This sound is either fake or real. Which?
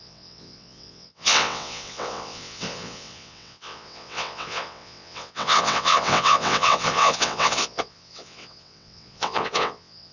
fake